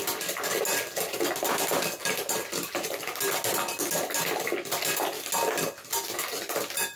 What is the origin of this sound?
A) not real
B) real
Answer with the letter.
B